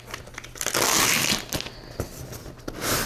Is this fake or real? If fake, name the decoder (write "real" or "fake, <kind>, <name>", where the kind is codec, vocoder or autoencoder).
real